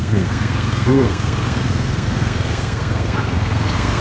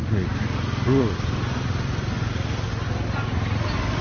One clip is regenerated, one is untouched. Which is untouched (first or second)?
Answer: second